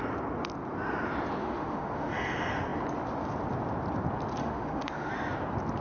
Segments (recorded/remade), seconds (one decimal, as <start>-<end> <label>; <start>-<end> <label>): 0.0-1.4 recorded; 1.4-2.1 remade; 2.1-4.4 recorded; 4.4-5.1 remade; 5.1-5.8 recorded